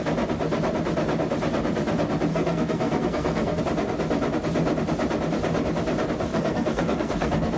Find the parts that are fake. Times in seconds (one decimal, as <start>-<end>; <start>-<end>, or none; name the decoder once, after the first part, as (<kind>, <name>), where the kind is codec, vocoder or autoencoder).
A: 2.3-3.6 (codec, SNAC); 6.3-7.6